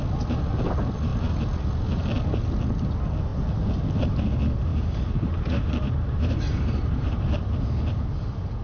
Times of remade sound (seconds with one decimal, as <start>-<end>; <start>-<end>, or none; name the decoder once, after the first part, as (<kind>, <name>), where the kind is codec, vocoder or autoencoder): 4.7-7.4 (vocoder, BigVGAN v2)